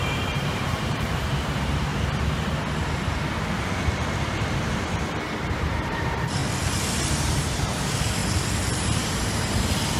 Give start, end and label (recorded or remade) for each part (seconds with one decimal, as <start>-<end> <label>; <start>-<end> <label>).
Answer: 0.0-1.9 remade; 1.9-4.5 recorded; 4.5-6.4 remade; 6.4-7.0 recorded; 7.0-8.2 remade; 8.2-8.7 recorded; 8.7-10.0 remade